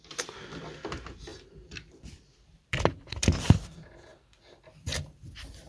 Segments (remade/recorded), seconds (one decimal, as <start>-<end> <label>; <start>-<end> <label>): 0.0-1.3 remade; 1.3-1.9 recorded; 1.9-4.1 remade; 4.1-5.0 recorded; 5.0-5.7 remade